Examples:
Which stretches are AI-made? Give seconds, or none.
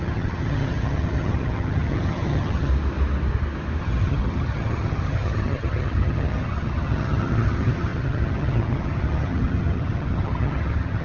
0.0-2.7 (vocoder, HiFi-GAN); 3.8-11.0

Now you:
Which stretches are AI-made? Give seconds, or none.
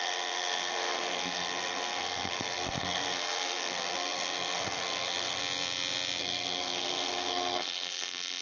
0.0-5.4 (codec, SNAC); 6.2-8.4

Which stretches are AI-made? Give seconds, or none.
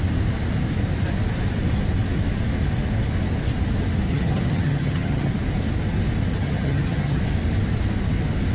4.1-5.3 (vocoder, HiFi-GAN); 6.3-7.2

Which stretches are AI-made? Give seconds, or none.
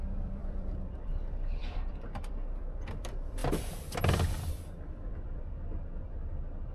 0.0-6.7 (vocoder, BigVGAN v2)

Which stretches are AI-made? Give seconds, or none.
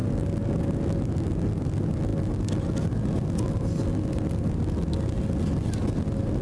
none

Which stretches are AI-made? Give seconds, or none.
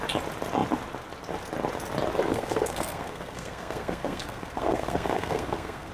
2.3-5.9 (codec, SNAC)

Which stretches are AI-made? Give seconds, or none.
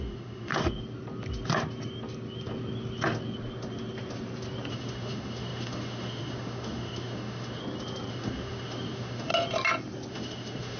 0.0-0.5 (autoencoder, DAC-VAE); 4.7-7.6; 8.1-9.3; 10.1-10.8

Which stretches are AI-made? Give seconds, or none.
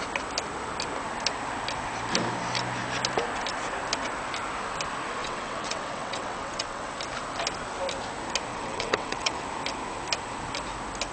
5.2-6.9 (vocoder, WaveNeXt); 8.5-9.4